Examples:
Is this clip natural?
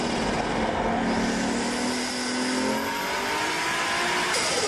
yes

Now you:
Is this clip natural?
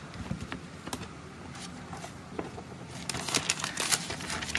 yes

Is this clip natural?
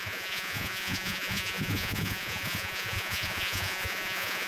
no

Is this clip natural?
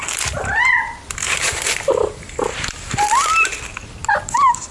yes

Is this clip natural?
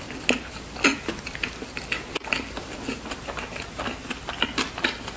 yes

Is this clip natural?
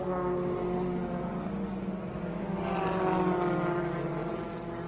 yes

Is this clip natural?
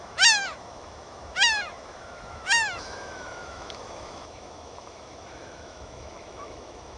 no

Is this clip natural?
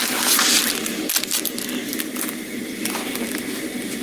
yes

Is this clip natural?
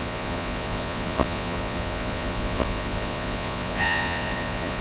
no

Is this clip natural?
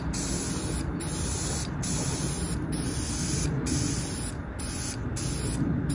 yes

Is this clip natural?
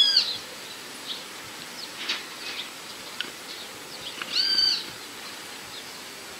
yes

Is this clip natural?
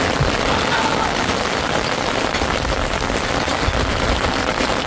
yes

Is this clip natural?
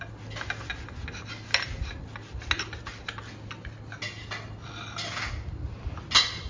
yes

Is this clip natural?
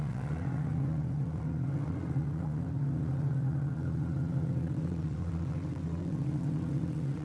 no